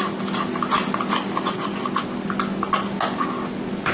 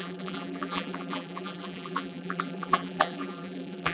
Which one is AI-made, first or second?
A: second